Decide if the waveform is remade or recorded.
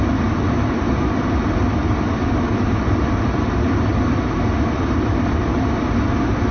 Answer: recorded